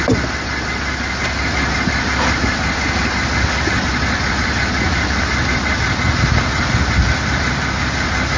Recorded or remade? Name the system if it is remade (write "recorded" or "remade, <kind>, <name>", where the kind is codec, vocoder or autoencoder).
recorded